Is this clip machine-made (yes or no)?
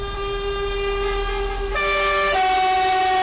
no